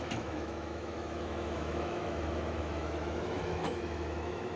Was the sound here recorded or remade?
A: remade